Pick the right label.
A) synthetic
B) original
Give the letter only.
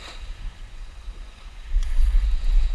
A